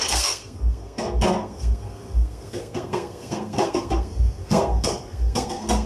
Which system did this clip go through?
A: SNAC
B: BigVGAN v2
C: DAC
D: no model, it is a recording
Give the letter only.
A